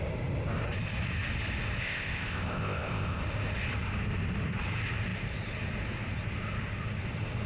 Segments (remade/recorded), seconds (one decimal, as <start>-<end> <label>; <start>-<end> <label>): 0.0-1.8 recorded; 1.8-3.2 remade; 3.2-7.5 recorded